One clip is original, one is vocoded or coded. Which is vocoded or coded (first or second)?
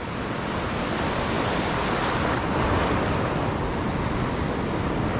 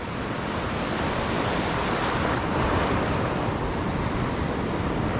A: second